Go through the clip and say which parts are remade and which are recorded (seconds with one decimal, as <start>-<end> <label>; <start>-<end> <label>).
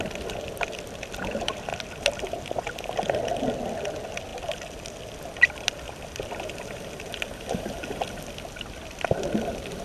0.0-1.7 recorded; 1.7-3.1 remade; 3.1-4.3 recorded; 4.3-8.1 remade; 8.1-9.8 recorded